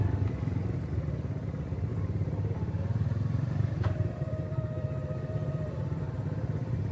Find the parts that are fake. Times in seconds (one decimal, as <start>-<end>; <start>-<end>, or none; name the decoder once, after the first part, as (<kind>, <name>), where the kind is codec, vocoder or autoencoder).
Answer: 1.9-6.0 (vocoder, BigVGAN v2)